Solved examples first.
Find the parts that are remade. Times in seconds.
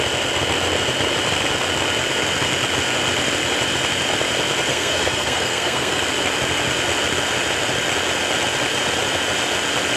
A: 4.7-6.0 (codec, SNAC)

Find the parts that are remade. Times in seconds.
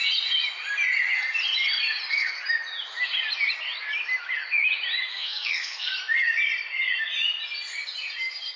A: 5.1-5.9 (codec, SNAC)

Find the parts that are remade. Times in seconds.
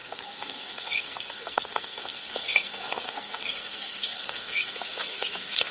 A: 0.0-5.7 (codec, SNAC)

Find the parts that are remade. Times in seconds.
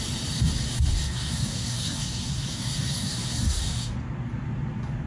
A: 0.9-3.9 (codec, SNAC)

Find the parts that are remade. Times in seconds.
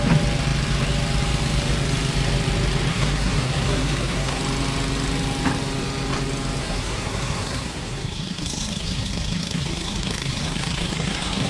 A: 2.9-4.4 (codec, SNAC); 6.6-11.5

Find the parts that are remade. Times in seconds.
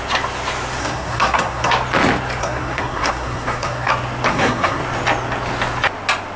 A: 0.8-1.7 (codec, SNAC); 2.4-3.9; 4.3-4.8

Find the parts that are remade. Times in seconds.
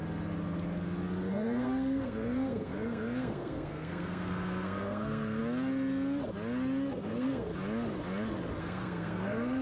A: 1.3-5.4 (codec, SNAC); 6.9-7.5; 8.6-9.6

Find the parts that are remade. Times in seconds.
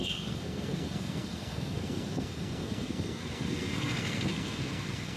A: 0.0-5.2 (codec, SNAC)